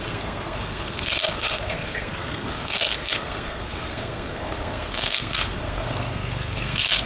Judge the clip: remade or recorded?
remade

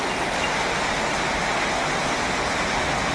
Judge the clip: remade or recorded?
recorded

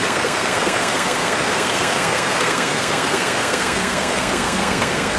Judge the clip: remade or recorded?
remade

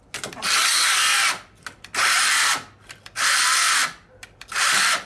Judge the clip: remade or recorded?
recorded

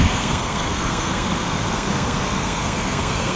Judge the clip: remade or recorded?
remade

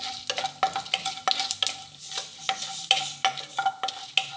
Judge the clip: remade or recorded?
recorded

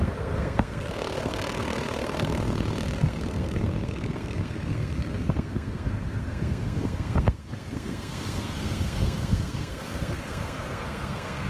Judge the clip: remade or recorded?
remade